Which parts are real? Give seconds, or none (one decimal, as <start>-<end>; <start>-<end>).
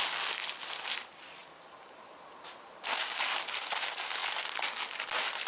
0.0-1.4; 3.3-5.5